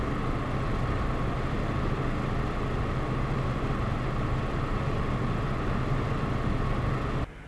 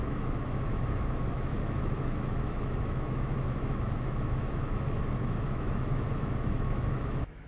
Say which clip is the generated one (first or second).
second